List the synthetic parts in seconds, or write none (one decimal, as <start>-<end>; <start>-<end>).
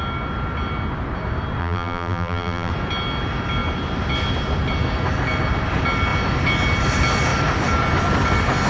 1.6-2.7